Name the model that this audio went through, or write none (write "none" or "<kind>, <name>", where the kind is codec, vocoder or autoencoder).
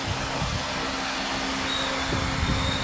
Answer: none